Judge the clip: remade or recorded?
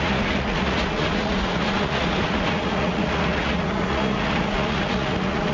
remade